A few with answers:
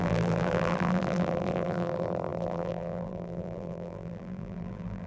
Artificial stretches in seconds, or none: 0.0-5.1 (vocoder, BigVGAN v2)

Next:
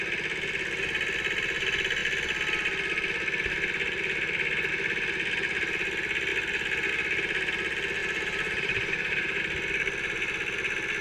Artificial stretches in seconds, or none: 8.0-9.4 (vocoder, BigVGAN v2)

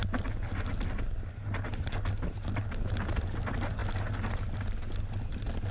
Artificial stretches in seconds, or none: none

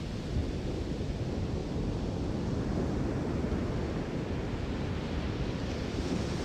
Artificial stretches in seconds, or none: none

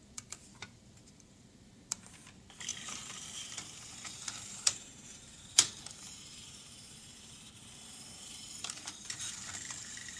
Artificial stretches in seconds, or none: 0.0-10.2 (vocoder, BigVGAN v2)

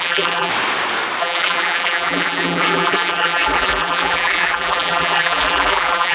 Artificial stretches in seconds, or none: 0.0-0.5 (vocoder, BigVGAN v2); 1.2-6.1

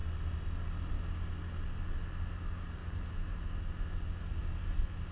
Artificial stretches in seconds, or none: 2.8-3.4 (vocoder, BigVGAN v2)

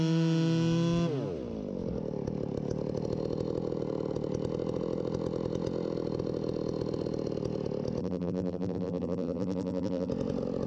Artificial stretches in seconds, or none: 8.0-10.1 (vocoder, BigVGAN v2)